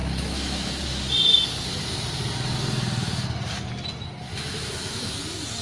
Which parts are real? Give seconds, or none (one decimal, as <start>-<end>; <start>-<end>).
0.8-4.3; 5.1-5.6